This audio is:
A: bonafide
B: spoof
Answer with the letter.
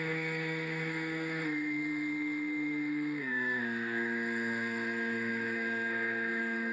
B